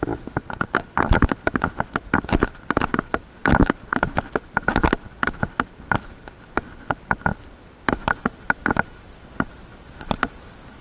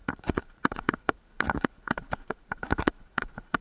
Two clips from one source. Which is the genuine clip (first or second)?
first